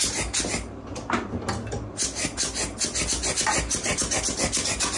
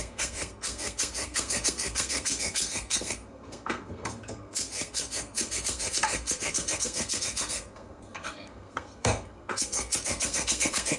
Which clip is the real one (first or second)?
first